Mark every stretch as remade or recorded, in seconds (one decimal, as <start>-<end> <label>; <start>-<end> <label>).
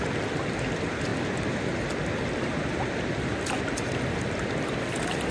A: 0.0-5.3 recorded